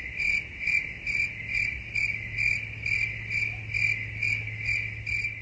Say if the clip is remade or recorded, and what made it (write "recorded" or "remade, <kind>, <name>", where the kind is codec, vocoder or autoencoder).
recorded